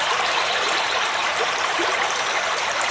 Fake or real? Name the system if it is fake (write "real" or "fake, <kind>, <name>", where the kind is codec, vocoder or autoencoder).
fake, vocoder, BigVGAN v2